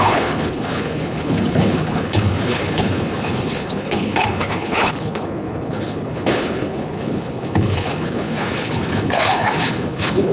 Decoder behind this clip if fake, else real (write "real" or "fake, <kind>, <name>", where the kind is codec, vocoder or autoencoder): fake, codec, HILCodec